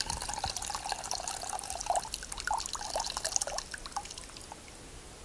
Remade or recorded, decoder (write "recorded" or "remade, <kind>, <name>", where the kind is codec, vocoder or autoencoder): recorded